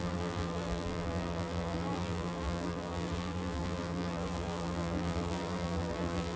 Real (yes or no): no